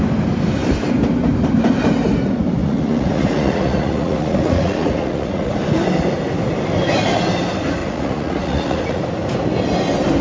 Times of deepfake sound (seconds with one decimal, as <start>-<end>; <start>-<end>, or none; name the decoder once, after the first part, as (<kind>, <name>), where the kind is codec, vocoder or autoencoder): 2.6-5.5 (vocoder, Vocos); 7.8-9.0